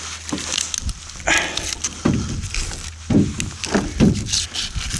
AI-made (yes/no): no